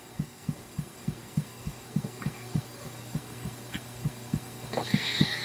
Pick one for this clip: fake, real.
fake